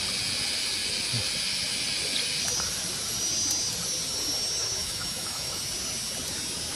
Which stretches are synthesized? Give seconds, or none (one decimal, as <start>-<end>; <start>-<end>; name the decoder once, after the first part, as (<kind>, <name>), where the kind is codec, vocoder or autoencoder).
4.6-5.6 (autoencoder, DAC-VAE)